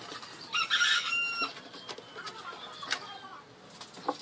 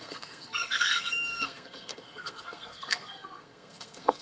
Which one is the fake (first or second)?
second